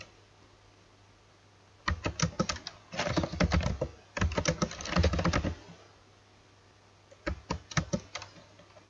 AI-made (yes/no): no